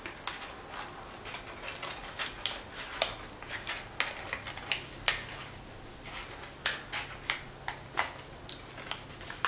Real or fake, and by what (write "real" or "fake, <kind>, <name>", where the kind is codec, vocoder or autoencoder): real